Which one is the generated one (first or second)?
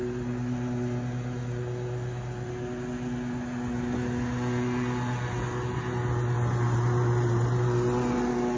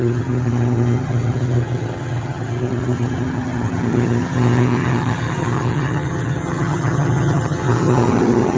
second